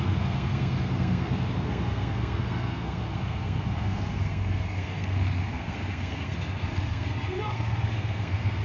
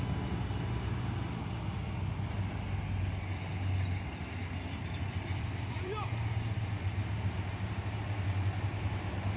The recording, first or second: second